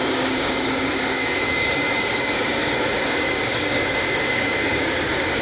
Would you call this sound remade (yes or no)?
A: yes